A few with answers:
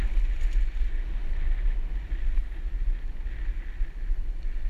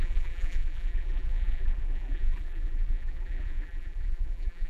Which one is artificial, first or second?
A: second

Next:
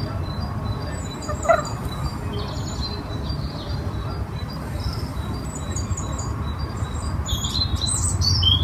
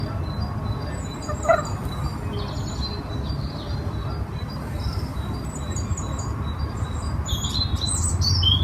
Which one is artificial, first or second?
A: first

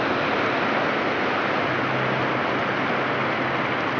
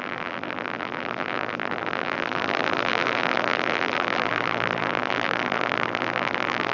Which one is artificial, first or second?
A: second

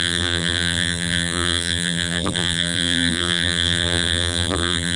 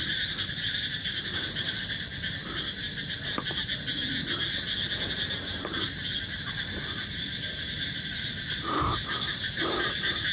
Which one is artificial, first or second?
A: first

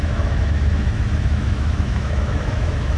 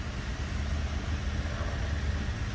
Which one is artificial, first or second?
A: first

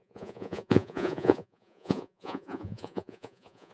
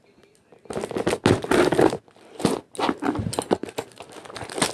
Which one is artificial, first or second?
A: first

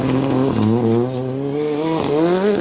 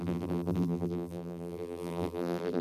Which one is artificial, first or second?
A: second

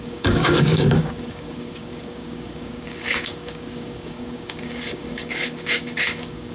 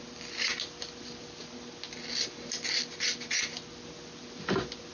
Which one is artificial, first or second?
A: first